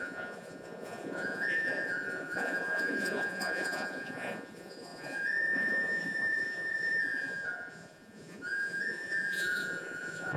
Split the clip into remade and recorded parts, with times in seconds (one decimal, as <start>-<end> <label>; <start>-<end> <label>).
0.0-10.4 remade